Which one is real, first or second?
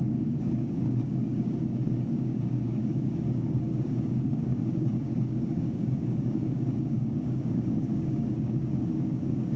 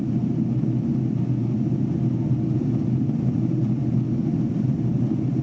second